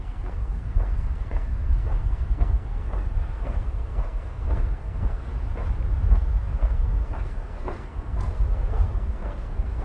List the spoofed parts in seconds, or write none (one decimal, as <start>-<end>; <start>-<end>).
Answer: 0.0-5.3; 6.1-9.8